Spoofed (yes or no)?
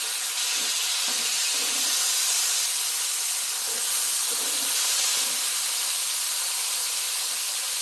no